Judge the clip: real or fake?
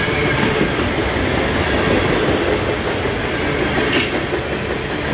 real